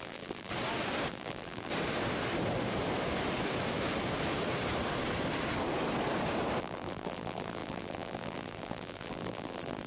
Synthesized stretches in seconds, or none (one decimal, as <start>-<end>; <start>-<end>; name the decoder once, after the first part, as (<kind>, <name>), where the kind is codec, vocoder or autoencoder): 0.0-0.5 (vocoder, BigVGAN v2); 1.1-1.7; 6.6-9.9